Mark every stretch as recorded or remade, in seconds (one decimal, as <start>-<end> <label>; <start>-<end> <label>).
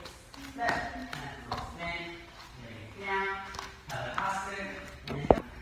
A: 0.0-2.8 recorded; 2.8-3.9 remade; 3.9-5.6 recorded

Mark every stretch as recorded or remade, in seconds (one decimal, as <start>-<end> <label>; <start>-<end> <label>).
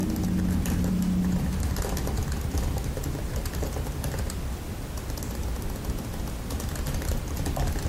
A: 0.0-7.9 recorded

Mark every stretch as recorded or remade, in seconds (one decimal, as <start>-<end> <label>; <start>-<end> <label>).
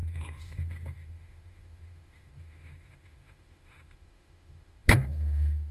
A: 0.0-5.7 remade